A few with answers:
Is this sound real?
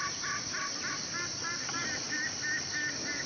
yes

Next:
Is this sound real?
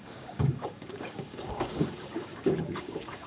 no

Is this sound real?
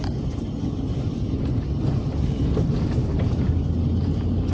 yes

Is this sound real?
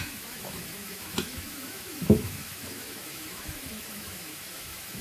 no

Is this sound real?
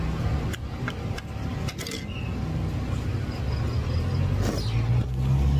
yes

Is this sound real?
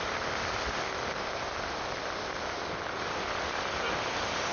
yes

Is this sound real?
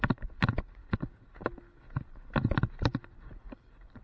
yes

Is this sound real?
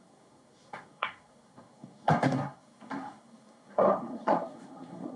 no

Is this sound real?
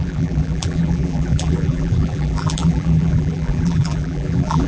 no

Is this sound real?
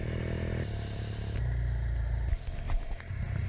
yes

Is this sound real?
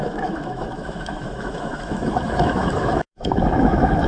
no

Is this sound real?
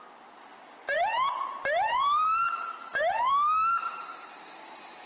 no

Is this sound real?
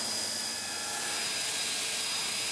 yes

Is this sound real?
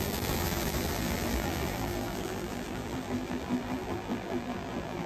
no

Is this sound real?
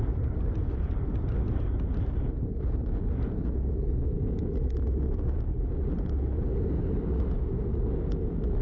yes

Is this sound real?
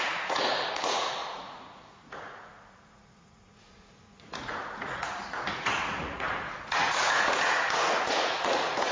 no